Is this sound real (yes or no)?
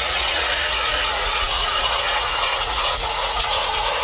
no